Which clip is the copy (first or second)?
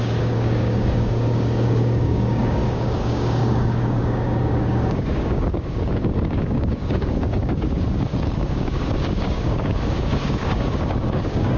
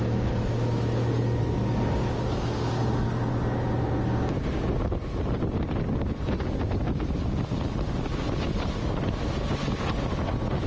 first